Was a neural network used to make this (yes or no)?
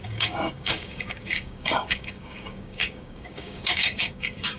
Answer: yes